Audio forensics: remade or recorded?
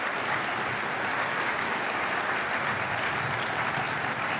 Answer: recorded